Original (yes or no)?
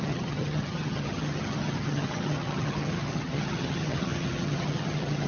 no